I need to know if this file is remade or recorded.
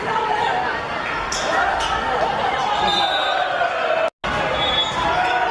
recorded